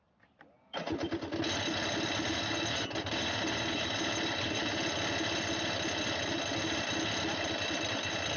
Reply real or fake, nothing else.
real